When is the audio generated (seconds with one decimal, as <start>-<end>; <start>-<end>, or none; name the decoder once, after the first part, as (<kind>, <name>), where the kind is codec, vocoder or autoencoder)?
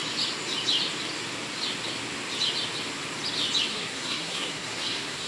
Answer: 3.7-5.3 (codec, SNAC)